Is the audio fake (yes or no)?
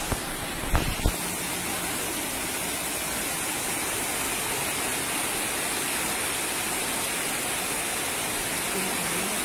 no